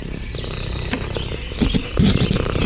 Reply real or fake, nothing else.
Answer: real